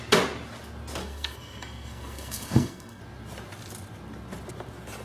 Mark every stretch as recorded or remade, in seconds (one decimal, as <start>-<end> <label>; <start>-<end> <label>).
0.0-1.0 recorded; 1.0-3.0 remade; 3.0-5.0 recorded